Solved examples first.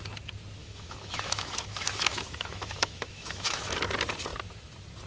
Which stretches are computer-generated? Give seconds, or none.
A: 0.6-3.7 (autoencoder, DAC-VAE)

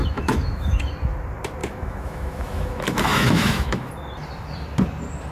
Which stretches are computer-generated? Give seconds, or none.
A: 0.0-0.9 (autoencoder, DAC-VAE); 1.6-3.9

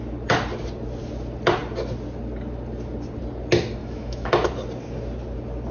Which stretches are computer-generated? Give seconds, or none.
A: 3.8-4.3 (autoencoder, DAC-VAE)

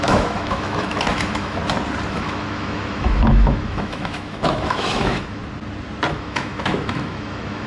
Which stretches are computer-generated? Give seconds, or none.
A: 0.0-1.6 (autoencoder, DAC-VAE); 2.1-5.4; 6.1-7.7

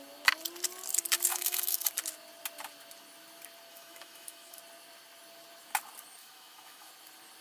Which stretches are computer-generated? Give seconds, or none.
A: 1.3-1.9 (autoencoder, DAC-VAE); 3.7-4.6; 6.2-6.9

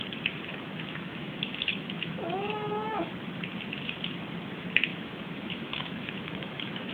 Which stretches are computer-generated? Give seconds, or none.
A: 0.5-3.1 (autoencoder, DAC-VAE); 4.9-6.9

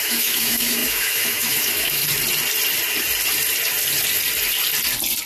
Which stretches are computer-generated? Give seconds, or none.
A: 0.0-2.0 (autoencoder, DAC-VAE)

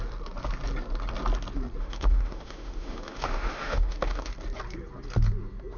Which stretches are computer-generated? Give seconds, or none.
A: 1.8-4.3 (autoencoder, DAC-VAE)